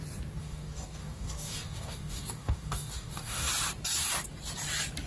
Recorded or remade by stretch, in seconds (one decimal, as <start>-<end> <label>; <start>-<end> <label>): 0.0-0.4 recorded; 0.4-3.5 remade; 3.5-5.1 recorded